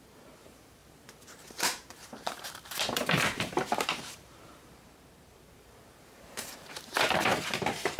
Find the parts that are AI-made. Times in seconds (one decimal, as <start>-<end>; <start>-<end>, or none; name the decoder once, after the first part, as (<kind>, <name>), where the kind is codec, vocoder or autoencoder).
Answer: 0.0-8.0 (vocoder, BigVGAN v2)